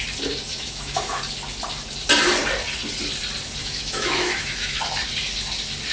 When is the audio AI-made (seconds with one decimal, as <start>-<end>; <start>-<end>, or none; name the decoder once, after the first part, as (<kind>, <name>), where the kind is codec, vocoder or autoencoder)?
0.5-1.2 (autoencoder, DAC-VAE); 3.6-4.8